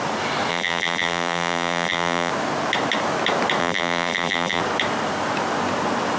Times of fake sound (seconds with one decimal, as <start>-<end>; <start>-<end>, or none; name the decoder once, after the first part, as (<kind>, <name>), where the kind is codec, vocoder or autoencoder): 0.5-2.3 (vocoder, BigVGAN v2); 3.6-4.6